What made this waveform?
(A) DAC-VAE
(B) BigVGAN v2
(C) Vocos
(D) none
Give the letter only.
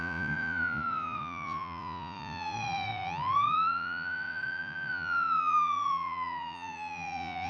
C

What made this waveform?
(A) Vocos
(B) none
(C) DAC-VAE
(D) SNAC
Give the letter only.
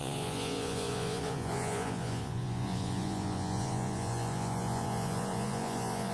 A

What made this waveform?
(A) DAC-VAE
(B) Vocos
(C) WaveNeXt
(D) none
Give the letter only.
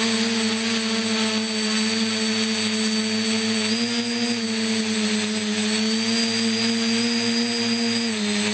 D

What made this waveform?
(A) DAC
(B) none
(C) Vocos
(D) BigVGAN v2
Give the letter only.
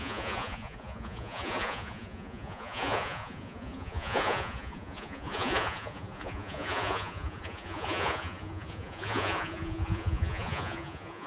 C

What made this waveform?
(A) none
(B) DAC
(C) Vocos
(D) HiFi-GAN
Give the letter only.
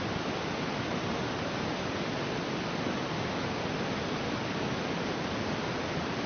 A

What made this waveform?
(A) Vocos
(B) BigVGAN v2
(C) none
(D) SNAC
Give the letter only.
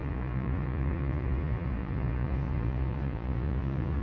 A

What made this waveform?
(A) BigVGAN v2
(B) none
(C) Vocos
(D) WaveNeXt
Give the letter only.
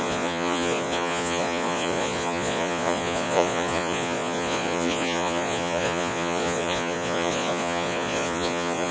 C